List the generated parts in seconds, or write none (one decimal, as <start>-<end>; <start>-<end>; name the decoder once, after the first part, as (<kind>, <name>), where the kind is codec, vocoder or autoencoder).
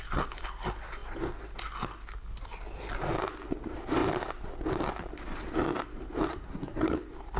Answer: 6.3-7.0 (codec, SNAC)